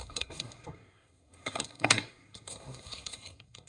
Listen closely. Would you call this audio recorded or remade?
remade